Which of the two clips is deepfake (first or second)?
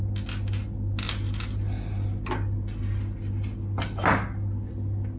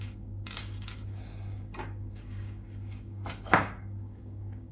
second